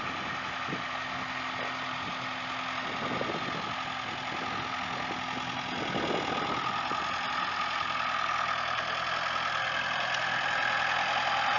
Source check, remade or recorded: recorded